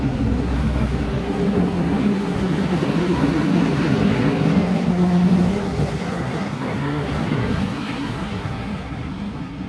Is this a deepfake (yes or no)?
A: yes